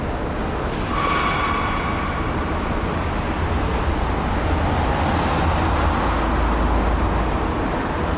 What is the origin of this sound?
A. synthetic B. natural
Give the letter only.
B